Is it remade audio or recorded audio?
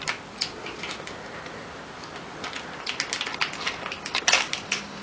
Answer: recorded